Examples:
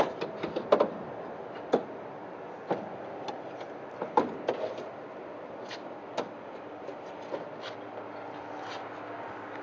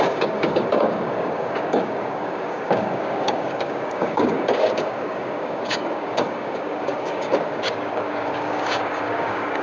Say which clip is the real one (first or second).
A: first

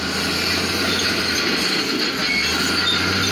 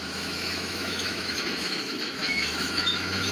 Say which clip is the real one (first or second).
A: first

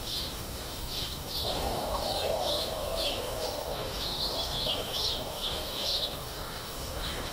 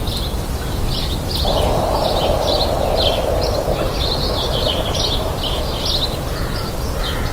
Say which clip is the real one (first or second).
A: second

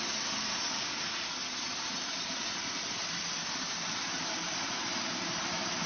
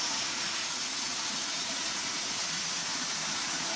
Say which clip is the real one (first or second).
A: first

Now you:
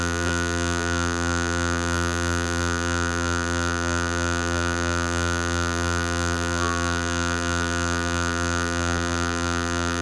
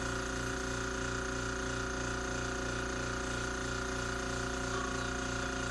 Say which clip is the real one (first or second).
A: second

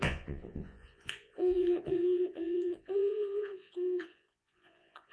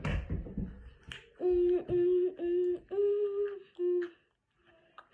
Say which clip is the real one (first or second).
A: second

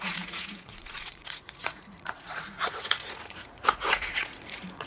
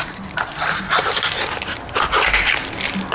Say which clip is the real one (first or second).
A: second